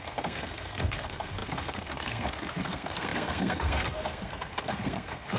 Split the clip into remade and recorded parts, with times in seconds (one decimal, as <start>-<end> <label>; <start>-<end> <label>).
0.0-5.4 remade